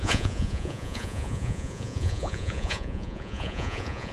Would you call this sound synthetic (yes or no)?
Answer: yes